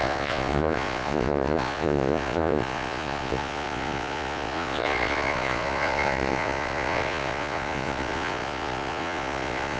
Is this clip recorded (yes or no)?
no